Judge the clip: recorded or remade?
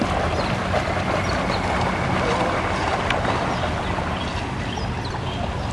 recorded